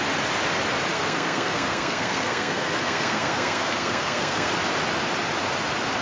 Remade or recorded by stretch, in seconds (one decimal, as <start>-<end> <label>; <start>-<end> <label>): 0.0-0.9 recorded; 0.9-4.5 remade; 4.5-6.0 recorded